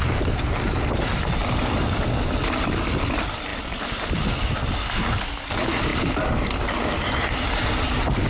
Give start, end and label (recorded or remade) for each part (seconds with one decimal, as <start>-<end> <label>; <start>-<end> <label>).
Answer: 0.0-8.3 recorded